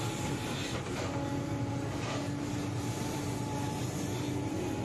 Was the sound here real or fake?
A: real